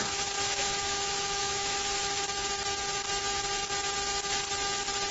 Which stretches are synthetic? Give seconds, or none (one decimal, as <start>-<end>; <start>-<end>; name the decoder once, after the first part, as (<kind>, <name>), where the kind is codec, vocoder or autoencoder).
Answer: 0.4-2.2 (autoencoder, DAC-VAE)